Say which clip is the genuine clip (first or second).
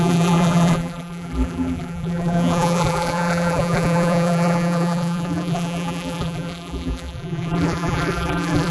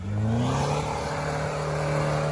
second